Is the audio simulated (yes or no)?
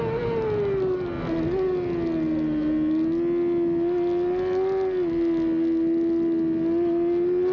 no